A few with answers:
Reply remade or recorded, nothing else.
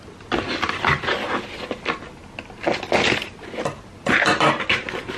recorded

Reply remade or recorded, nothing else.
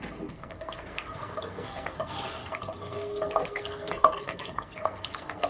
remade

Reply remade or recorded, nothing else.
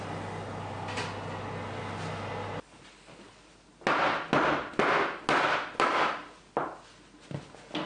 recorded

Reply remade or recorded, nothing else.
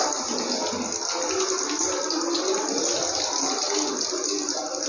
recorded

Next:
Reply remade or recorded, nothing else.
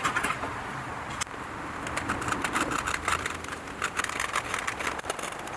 remade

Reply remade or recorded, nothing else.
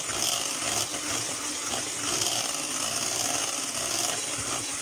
recorded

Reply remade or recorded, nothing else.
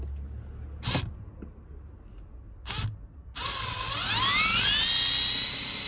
recorded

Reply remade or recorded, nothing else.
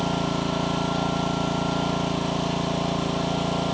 recorded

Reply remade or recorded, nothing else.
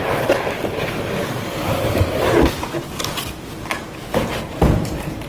remade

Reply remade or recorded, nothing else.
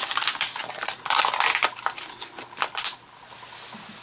recorded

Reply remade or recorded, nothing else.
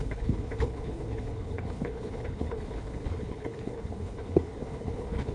remade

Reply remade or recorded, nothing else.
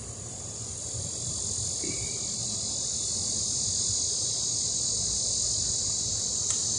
recorded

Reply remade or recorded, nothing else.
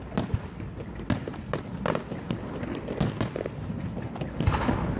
recorded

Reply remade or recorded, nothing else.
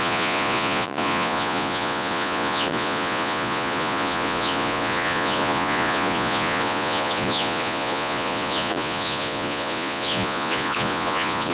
remade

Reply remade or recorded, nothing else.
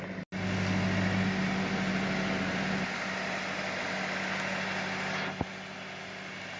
recorded